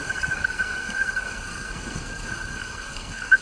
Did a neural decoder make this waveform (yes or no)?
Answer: yes